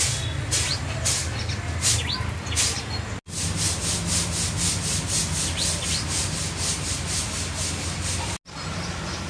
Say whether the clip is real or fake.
real